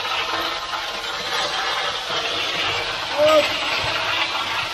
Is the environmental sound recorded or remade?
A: recorded